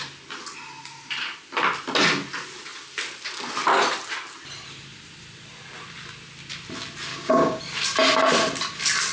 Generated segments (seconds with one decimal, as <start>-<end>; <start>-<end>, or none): 7.1-7.6